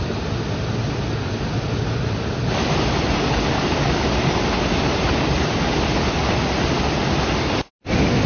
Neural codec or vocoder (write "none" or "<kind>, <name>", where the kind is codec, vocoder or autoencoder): none